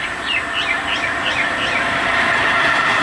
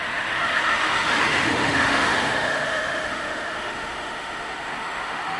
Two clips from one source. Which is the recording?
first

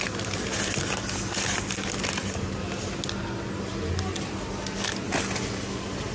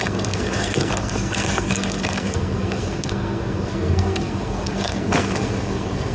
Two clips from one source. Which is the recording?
first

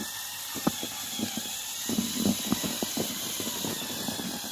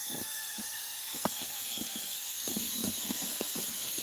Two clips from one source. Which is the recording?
first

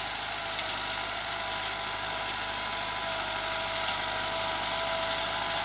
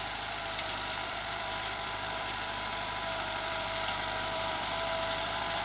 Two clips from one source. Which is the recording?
first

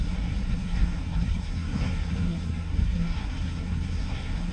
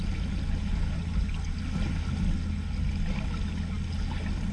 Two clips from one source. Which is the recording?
second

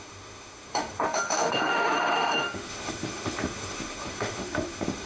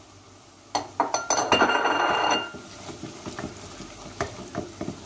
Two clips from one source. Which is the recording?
second